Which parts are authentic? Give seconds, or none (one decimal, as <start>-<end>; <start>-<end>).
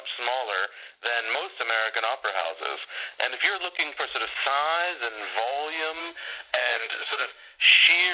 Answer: 0.0-6.0; 7.6-8.1